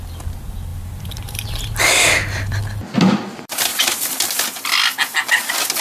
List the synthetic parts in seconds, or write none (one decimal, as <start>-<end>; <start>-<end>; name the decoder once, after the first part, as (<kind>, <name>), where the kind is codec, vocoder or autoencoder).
0.7-2.6 (vocoder, BigVGAN v2); 3.7-4.2